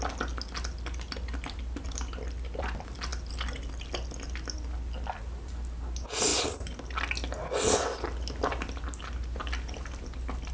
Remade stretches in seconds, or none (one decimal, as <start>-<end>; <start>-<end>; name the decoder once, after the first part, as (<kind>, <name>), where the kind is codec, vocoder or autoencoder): none